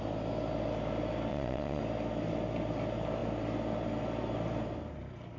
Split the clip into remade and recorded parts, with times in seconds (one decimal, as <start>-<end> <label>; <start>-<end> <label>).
0.0-1.3 recorded; 1.3-1.8 remade; 1.8-5.4 recorded